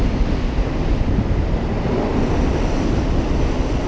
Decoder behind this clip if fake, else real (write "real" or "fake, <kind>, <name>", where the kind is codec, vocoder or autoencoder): real